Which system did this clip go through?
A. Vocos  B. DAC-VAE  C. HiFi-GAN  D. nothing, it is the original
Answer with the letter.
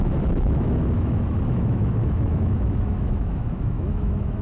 B